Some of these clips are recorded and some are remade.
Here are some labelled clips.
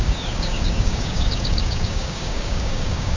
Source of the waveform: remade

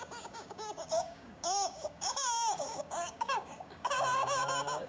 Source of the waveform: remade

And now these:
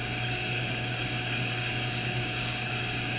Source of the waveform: remade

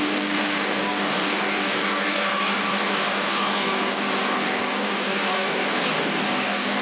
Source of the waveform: remade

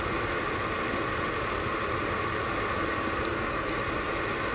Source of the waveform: recorded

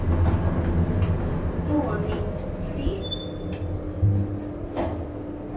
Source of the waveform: recorded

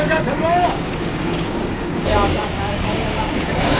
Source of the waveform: remade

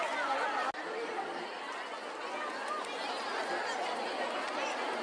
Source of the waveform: recorded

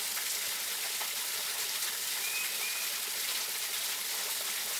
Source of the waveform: recorded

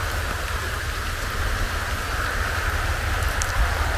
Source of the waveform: recorded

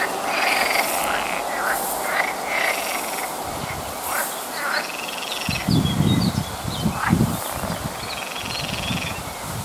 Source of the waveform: recorded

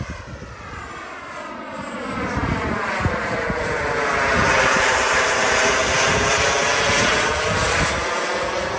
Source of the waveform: recorded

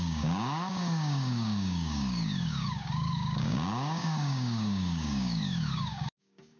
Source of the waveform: remade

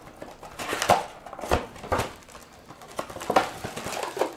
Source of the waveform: recorded